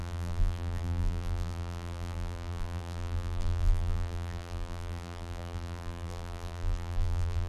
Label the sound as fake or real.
fake